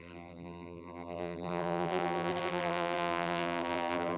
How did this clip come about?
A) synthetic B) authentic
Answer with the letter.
A